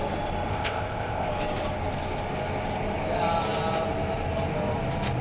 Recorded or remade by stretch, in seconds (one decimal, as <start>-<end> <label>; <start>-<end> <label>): 0.0-0.5 recorded; 0.5-1.3 remade; 1.3-5.2 recorded